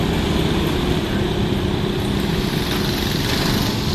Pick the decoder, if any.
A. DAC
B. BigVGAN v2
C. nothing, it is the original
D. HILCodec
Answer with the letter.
C